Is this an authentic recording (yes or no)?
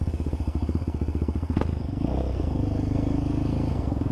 no